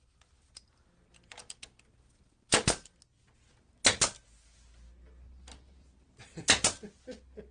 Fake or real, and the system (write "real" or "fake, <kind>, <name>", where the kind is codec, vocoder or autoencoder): real